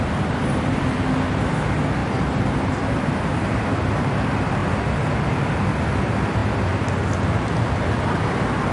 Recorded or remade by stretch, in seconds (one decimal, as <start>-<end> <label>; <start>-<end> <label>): 0.0-4.6 remade; 4.6-5.9 recorded; 5.9-6.4 remade; 6.4-7.8 recorded; 7.8-8.7 remade